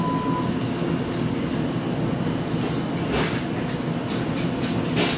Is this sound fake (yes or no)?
no